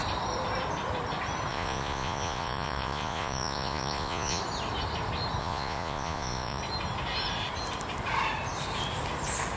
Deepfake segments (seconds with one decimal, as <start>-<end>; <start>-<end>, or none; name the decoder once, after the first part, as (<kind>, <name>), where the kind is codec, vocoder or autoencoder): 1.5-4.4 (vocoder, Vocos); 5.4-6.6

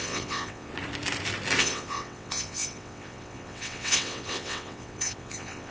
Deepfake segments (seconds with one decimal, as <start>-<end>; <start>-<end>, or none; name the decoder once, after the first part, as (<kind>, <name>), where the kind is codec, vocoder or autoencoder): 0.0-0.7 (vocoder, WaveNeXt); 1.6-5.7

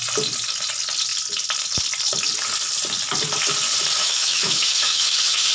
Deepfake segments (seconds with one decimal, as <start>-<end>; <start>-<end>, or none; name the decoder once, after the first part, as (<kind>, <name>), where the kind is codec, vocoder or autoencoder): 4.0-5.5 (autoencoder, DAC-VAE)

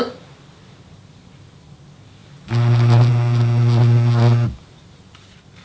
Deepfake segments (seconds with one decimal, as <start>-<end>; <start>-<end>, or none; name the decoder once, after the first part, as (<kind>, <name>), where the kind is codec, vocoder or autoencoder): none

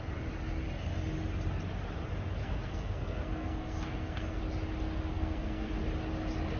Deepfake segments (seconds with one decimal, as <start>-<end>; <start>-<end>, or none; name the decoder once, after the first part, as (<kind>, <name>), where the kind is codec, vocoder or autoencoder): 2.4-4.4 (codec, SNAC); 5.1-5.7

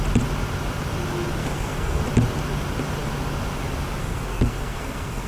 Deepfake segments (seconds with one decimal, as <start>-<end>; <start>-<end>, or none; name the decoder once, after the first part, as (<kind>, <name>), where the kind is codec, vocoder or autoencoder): 1.4-2.0 (codec, SNAC); 4.0-5.3